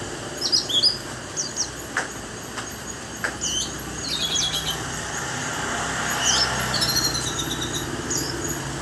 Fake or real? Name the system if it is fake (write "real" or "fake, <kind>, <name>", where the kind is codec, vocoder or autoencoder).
real